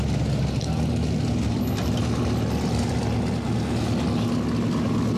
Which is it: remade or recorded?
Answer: recorded